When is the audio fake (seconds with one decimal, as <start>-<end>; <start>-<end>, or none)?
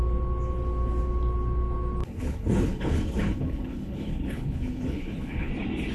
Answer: 2.0-5.5